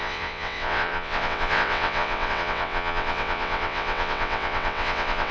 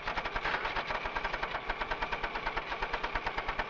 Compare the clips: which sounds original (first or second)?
second